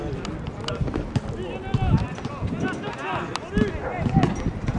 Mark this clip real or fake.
real